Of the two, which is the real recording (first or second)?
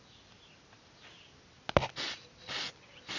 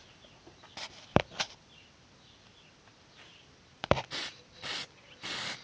first